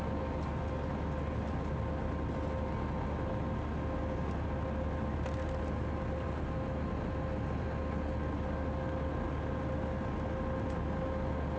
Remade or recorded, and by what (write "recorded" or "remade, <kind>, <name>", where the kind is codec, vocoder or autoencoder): recorded